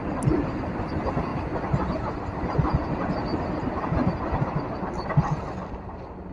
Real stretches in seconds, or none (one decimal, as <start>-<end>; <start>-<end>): 0.0-6.3

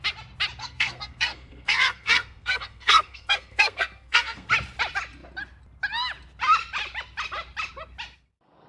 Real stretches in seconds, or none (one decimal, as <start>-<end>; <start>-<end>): 0.0-0.6; 4.5-8.7

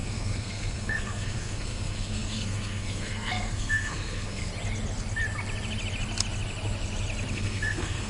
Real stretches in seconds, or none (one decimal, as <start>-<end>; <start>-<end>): 4.5-7.3

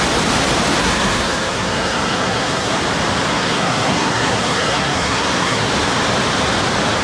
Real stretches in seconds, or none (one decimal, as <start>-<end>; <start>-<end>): 0.0-0.8; 2.8-3.3; 5.7-7.0

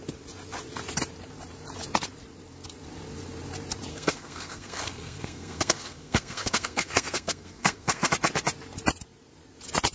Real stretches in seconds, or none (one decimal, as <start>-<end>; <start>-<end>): 0.0-3.9; 8.1-9.9

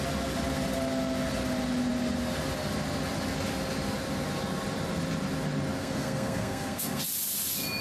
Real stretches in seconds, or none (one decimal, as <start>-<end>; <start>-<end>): 0.0-5.8; 7.0-7.8

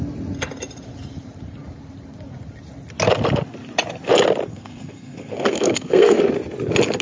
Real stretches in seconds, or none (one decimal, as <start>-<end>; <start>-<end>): 0.0-4.5; 6.2-7.0

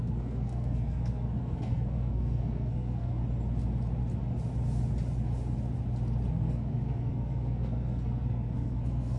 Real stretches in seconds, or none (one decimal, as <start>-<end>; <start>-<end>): 3.2-6.3